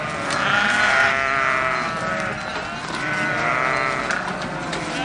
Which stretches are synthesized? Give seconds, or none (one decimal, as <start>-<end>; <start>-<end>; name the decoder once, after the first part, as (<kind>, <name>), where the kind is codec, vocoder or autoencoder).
none